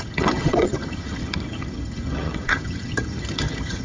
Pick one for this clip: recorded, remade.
remade